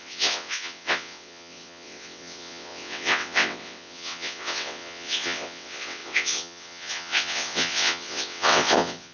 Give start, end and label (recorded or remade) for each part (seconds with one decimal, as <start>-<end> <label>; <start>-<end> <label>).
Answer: 0.0-9.1 remade